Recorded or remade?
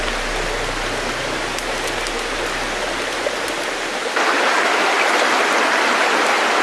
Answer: recorded